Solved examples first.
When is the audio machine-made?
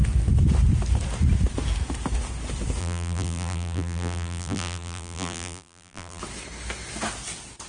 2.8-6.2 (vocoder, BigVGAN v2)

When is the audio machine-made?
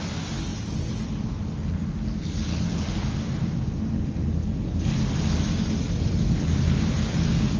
none